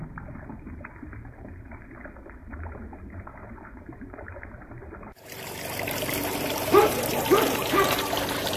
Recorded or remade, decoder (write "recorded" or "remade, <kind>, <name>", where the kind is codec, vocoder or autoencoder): remade, vocoder, BigVGAN v2